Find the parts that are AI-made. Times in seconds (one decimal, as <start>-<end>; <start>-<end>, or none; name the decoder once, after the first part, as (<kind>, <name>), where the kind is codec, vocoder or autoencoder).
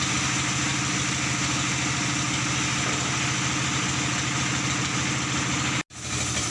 none